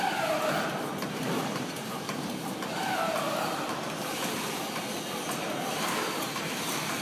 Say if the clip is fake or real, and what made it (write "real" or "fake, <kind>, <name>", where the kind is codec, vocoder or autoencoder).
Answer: fake, vocoder, BigVGAN v2